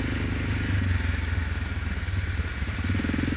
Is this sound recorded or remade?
recorded